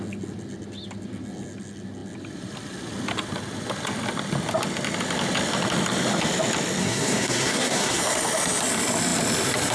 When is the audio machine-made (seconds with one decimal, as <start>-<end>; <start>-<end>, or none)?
6.8-8.0